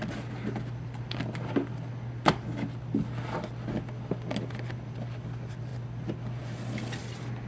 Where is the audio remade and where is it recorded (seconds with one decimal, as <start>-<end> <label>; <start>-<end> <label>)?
0.0-7.5 recorded